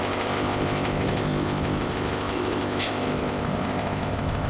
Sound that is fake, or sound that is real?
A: fake